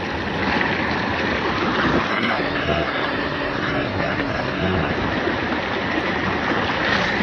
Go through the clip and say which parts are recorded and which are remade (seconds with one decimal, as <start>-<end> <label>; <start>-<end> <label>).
0.0-2.1 recorded; 2.1-4.9 remade; 4.9-7.2 recorded